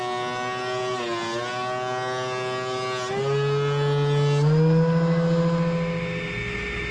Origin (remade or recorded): recorded